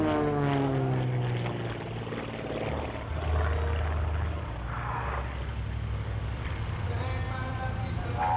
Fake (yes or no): no